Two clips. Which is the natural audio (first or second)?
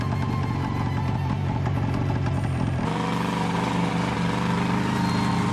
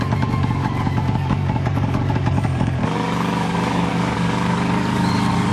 first